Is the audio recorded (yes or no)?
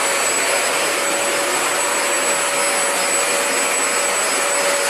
yes